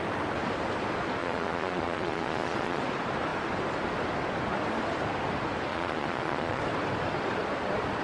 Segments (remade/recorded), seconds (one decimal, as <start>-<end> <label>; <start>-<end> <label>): 0.0-1.2 recorded; 1.2-2.8 remade; 2.8-5.7 recorded; 5.7-6.6 remade; 6.6-8.0 recorded